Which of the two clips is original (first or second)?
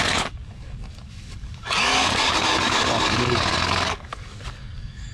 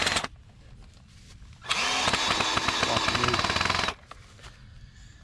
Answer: second